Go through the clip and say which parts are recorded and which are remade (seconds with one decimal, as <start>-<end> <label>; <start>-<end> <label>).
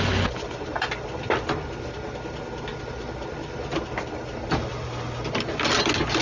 0.0-6.2 recorded